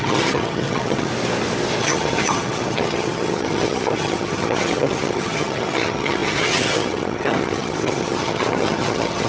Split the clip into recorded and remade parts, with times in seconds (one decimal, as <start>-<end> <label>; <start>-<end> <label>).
0.0-1.1 remade; 1.1-1.8 recorded; 1.8-9.3 remade